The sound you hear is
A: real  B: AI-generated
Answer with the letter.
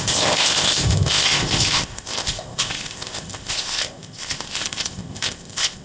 B